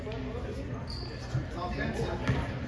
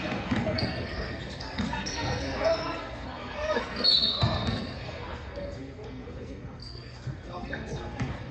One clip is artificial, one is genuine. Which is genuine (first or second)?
first